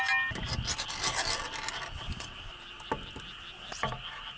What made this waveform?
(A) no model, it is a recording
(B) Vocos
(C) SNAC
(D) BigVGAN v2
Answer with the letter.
A